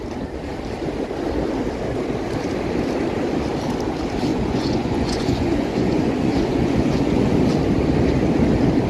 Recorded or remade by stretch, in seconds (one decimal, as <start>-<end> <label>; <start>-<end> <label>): 0.0-4.3 recorded; 4.3-7.3 remade; 7.3-8.9 recorded